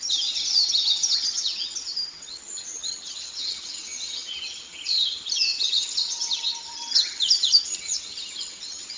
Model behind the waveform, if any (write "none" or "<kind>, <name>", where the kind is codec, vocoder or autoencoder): vocoder, HiFi-GAN